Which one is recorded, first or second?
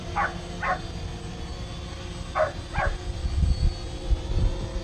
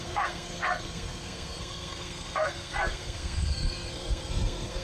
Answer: first